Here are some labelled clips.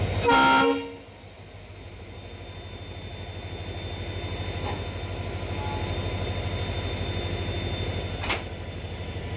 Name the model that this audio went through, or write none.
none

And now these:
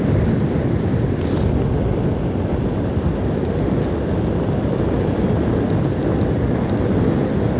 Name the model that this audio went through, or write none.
none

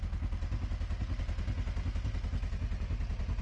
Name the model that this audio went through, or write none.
none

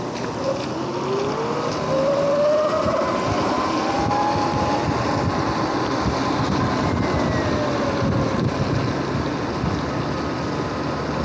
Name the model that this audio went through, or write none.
none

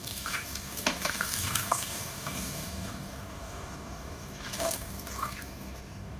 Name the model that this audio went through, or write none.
codec, DAC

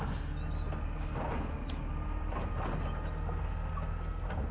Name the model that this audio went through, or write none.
none